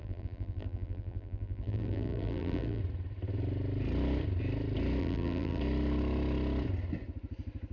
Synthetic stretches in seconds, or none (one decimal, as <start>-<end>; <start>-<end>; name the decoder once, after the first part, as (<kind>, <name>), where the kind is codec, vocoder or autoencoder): 0.0-2.8 (vocoder, BigVGAN v2); 5.0-5.6